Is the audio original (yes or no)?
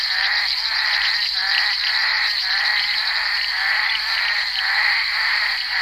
no